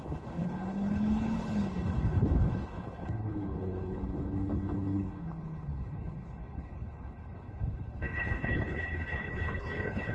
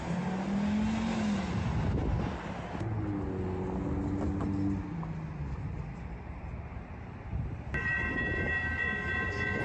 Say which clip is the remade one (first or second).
first